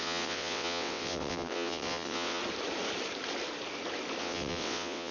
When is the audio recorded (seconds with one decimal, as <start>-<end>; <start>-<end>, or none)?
2.4-4.2